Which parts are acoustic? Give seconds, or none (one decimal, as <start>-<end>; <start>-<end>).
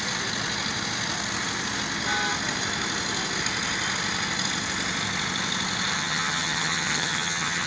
0.0-5.9